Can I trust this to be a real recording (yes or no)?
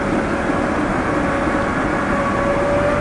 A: yes